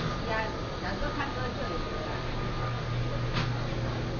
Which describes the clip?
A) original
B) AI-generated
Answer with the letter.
A